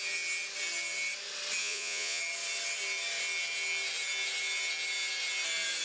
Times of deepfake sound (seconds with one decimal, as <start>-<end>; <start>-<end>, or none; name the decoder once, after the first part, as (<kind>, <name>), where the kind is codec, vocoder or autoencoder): 1.6-2.2 (vocoder, Vocos)